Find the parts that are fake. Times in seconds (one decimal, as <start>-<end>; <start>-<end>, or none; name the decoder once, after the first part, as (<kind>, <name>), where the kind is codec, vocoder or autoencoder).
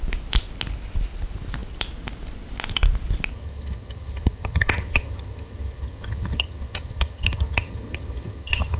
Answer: 3.3-8.8 (vocoder, HiFi-GAN)